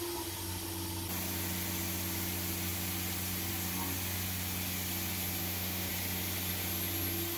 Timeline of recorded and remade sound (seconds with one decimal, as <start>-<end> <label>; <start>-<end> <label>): 0.0-5.4 recorded; 5.4-5.9 remade; 5.9-7.4 recorded